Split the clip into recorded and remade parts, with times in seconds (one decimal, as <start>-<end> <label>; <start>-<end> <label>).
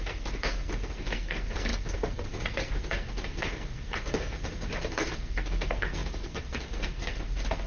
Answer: 0.0-7.7 remade